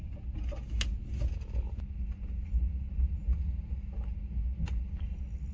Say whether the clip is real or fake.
real